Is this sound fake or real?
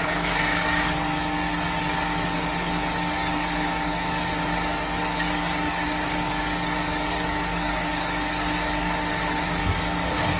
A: fake